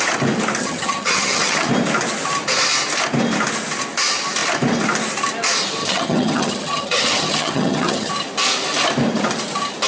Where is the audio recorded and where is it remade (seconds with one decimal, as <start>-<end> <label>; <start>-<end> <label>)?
0.0-0.6 recorded; 0.6-1.7 remade; 1.7-5.8 recorded; 5.8-8.1 remade; 8.1-9.9 recorded